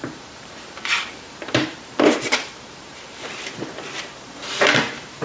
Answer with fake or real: fake